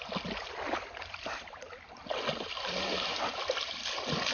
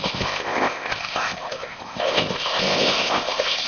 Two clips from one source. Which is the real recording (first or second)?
first